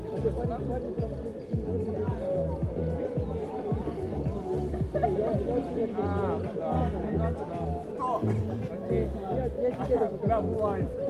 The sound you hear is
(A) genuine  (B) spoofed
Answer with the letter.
A